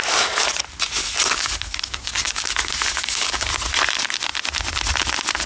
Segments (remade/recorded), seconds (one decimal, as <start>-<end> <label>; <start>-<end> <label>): 0.0-1.0 recorded; 1.0-3.5 remade; 3.5-5.5 recorded